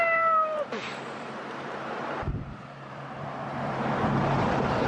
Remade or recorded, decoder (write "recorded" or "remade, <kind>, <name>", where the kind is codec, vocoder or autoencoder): remade, vocoder, BigVGAN v2